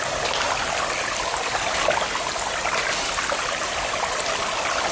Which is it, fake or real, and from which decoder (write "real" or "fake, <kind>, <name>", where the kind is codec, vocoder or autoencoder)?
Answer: real